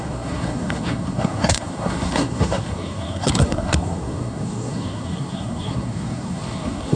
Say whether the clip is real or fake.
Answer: fake